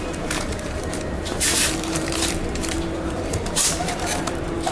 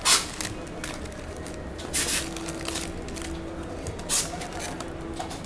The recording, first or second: second